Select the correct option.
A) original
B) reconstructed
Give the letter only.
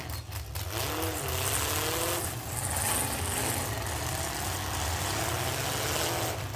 A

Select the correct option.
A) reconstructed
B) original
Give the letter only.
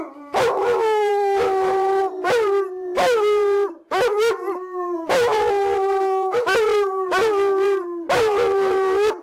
A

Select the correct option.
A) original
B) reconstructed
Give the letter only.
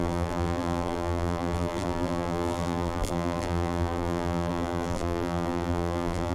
B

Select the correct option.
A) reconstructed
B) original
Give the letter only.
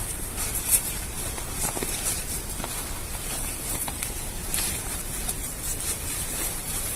A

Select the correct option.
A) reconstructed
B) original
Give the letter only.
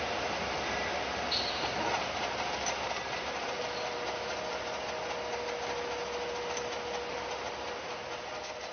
B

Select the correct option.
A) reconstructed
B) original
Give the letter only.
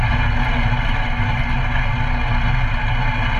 B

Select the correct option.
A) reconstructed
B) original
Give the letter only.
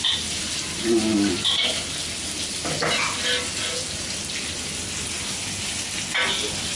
B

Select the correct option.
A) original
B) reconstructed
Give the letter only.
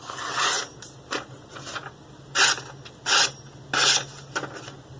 A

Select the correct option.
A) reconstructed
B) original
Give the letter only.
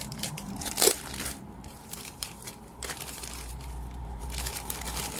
A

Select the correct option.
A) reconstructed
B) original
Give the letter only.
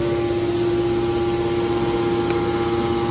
B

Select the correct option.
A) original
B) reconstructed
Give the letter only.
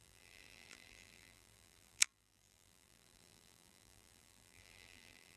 B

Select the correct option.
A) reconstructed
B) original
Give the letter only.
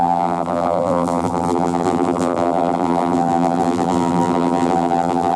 A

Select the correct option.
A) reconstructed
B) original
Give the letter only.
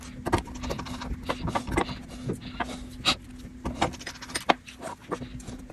B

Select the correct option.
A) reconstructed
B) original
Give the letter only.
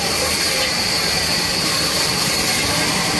A